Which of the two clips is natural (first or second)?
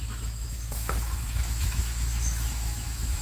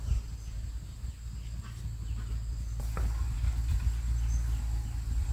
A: second